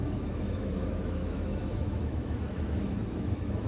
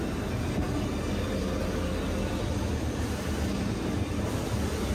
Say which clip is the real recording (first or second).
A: second